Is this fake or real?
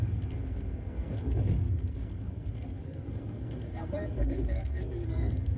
fake